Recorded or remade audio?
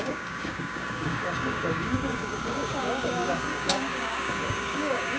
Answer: remade